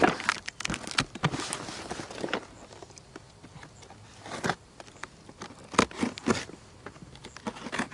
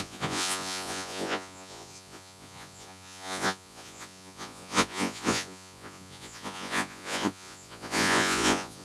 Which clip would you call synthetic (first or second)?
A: second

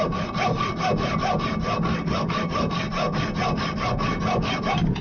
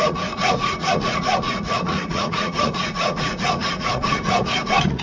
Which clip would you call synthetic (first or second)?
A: second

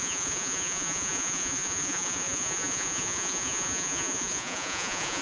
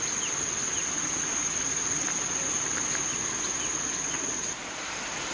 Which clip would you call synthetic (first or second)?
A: first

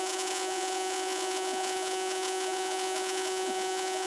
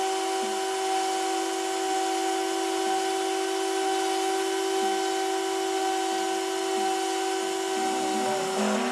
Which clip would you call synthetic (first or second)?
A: first